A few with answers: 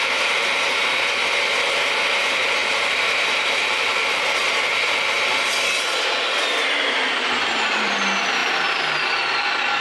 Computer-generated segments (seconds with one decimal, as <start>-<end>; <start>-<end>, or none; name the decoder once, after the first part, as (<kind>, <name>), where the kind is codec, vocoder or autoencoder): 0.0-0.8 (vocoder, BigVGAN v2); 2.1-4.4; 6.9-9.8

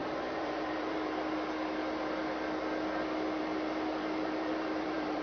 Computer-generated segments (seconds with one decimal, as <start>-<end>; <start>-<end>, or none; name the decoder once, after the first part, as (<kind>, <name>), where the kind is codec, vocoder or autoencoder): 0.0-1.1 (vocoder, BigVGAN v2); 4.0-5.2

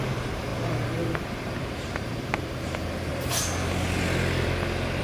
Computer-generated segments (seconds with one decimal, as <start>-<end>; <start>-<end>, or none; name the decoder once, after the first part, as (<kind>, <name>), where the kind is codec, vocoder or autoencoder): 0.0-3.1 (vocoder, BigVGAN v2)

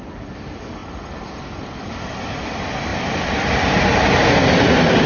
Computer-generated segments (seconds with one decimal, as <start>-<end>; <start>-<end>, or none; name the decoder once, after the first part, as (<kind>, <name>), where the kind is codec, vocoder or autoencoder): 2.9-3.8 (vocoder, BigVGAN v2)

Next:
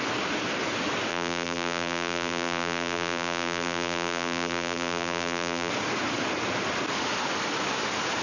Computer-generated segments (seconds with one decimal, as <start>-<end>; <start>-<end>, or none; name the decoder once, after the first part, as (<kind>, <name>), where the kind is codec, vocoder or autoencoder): 1.1-5.7 (vocoder, BigVGAN v2)